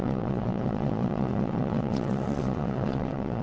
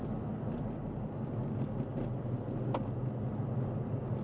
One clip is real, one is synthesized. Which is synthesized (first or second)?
first